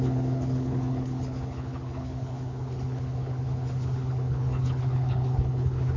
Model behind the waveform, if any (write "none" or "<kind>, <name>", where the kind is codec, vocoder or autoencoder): codec, HILCodec